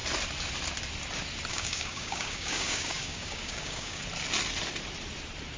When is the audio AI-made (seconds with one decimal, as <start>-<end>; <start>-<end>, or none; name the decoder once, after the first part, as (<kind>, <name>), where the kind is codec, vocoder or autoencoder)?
1.5-4.0 (codec, DAC)